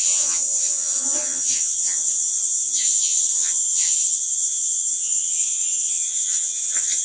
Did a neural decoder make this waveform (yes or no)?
yes